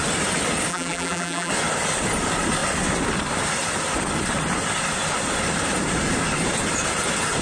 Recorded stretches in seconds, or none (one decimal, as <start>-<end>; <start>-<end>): 0.0-0.7; 1.5-7.4